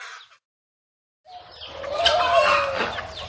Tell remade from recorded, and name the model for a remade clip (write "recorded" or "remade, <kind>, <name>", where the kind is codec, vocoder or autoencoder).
recorded